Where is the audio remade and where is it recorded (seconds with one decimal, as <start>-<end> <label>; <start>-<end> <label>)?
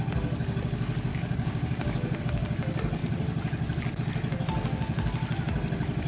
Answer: 0.0-1.1 recorded; 1.1-2.2 remade; 2.2-6.1 recorded